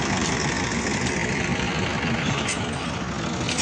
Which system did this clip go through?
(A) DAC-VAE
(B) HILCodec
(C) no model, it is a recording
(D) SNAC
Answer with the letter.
C